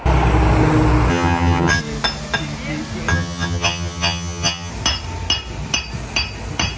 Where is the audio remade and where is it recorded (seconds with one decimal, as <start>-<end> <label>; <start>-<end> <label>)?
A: 0.0-1.1 recorded; 1.1-1.8 remade; 1.8-3.1 recorded; 3.1-4.7 remade; 4.7-6.8 recorded